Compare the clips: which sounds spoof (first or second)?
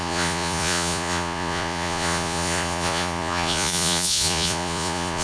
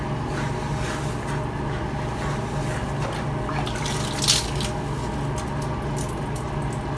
first